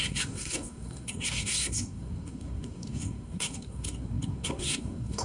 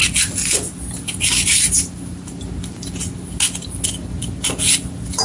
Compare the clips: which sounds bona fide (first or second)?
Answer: second